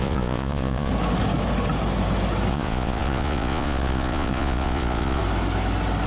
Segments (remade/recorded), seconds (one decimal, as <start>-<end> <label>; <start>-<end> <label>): 0.0-0.9 remade; 0.9-2.5 recorded; 2.5-5.2 remade; 5.2-6.1 recorded